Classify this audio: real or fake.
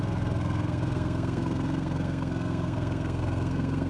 fake